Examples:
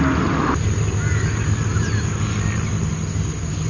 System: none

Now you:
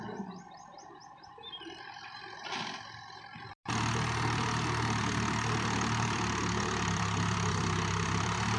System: vocoder, BigVGAN v2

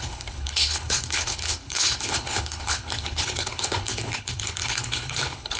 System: codec, HILCodec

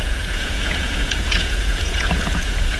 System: vocoder, Vocos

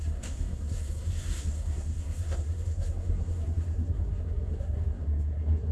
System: codec, SNAC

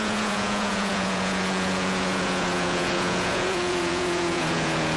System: vocoder, Vocos